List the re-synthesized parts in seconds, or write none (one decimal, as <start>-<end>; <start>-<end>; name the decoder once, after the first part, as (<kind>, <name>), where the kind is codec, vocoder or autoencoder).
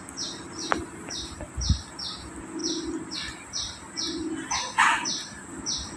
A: none